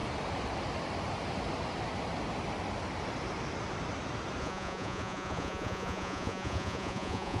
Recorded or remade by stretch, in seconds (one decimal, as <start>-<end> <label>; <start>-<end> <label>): 0.0-4.4 recorded; 4.4-7.4 remade